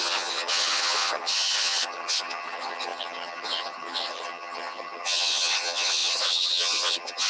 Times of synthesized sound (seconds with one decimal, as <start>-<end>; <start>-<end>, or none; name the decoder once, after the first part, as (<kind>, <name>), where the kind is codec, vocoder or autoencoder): 0.0-7.3 (vocoder, HiFi-GAN)